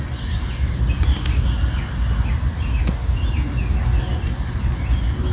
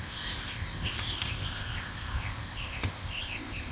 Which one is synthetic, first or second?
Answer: second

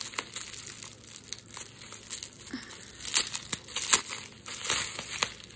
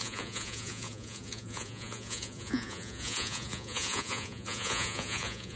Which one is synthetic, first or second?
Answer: second